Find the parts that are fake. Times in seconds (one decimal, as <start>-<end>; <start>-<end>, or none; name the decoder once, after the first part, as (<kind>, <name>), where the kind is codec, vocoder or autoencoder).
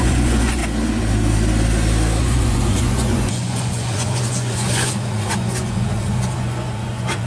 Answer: 0.0-0.6 (vocoder, Vocos); 2.2-7.3